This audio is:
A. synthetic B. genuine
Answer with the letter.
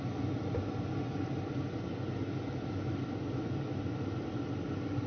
B